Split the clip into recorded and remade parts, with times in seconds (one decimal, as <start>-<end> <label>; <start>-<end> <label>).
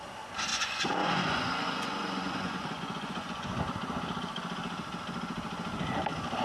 0.0-0.5 recorded; 0.5-3.6 remade; 3.6-6.4 recorded